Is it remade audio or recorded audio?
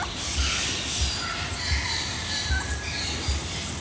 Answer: recorded